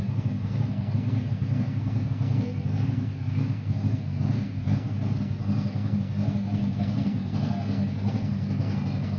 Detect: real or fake fake